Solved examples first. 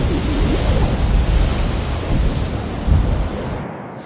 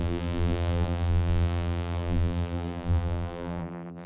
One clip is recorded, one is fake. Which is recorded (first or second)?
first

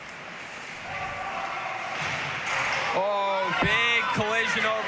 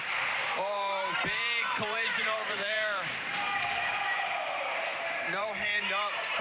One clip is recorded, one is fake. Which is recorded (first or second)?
first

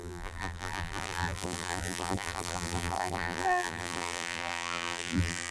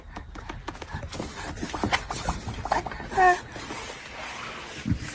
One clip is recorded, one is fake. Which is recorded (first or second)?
second